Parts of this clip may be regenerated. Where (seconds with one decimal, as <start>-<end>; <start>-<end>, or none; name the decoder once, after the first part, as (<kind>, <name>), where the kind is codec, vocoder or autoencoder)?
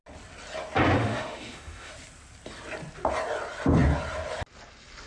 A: 1.0-1.9 (autoencoder, DAC-VAE)